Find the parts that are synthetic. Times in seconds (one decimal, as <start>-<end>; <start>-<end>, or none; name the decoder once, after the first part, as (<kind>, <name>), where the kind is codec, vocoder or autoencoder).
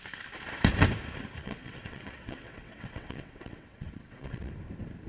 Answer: 1.4-4.5 (vocoder, WaveNeXt)